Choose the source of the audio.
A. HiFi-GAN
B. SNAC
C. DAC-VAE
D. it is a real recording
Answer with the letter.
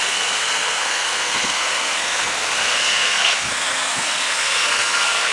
B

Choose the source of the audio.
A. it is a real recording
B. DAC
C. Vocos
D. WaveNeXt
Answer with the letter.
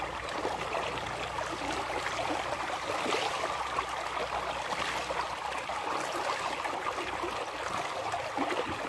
A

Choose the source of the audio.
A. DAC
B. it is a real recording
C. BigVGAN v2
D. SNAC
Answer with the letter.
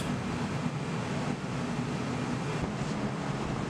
B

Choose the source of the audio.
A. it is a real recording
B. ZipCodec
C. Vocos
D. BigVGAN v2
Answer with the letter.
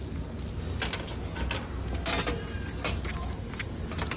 A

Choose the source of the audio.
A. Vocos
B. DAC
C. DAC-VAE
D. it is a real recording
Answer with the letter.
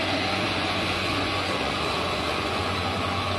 A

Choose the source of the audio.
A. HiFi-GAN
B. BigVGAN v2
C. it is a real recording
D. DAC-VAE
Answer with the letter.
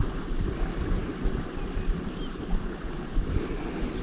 C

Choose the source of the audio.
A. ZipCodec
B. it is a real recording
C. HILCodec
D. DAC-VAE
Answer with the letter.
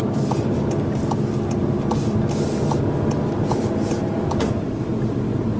B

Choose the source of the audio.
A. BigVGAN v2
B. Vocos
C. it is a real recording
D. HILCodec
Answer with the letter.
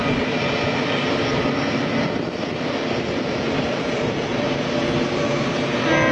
C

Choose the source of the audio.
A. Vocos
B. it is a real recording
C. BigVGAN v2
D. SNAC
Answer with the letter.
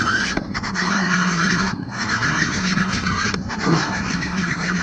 D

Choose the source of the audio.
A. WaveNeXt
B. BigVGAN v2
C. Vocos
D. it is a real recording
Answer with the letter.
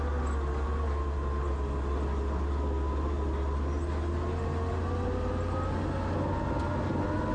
D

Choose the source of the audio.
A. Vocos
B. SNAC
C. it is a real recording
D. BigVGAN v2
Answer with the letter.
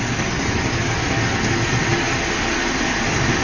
C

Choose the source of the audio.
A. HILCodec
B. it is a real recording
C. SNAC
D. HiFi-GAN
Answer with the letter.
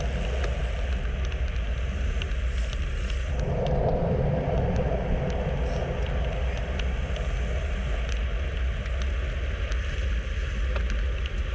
B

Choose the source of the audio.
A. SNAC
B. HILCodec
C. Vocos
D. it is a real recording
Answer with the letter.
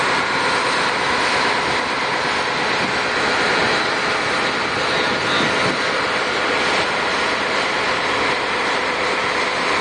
D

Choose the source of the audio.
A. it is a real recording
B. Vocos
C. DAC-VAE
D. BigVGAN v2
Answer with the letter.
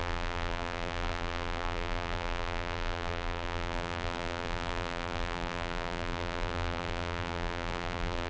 D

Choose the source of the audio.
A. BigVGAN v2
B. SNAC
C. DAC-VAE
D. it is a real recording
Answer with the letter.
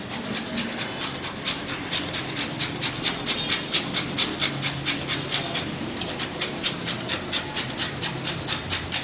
D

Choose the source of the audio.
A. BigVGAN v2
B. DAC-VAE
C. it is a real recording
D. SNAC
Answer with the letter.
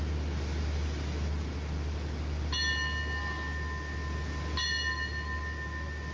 C